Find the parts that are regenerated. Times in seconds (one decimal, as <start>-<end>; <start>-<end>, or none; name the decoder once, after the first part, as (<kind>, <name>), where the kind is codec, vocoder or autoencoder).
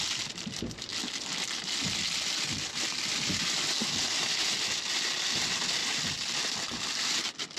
5.8-6.4 (vocoder, BigVGAN v2)